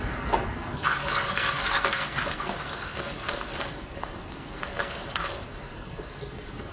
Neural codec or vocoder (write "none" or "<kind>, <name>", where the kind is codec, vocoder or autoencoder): codec, SNAC